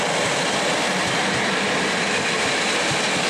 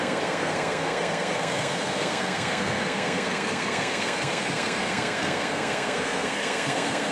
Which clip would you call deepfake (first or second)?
second